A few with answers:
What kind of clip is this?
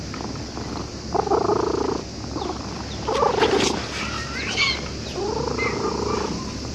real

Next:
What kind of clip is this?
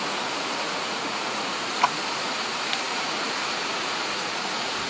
fake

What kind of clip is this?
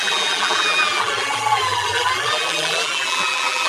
fake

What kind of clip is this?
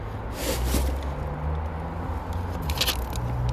real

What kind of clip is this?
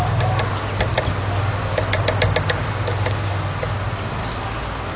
real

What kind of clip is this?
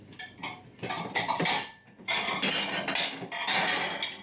real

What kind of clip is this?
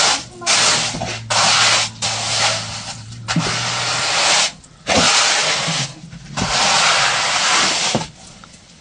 real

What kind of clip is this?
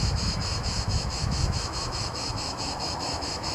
fake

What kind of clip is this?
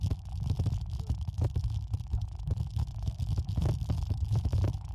fake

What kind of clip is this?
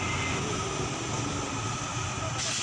real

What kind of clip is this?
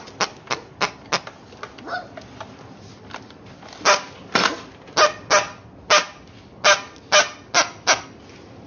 real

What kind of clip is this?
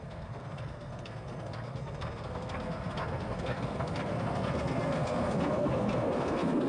fake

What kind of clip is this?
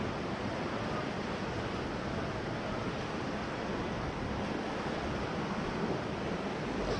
real